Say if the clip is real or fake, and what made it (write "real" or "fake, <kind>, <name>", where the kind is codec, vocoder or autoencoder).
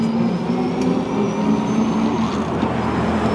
real